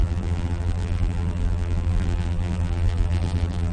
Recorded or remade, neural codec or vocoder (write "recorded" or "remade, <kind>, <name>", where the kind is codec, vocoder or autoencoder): remade, vocoder, BigVGAN v2